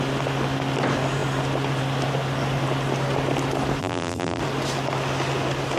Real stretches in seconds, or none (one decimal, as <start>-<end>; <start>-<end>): 0.0-3.8; 4.4-5.8